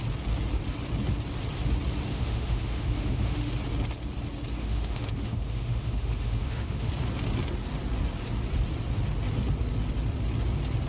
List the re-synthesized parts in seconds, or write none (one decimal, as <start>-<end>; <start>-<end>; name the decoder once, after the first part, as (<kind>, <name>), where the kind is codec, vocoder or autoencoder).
2.1-3.5 (autoencoder, DAC-VAE); 4.6-6.9